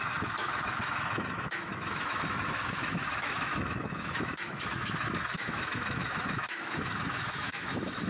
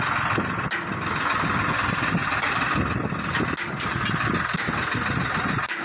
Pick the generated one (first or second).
first